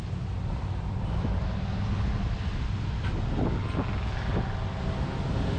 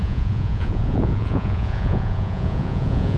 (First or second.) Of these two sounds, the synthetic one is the second